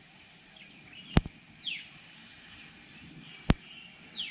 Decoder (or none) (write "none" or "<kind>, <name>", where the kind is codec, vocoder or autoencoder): none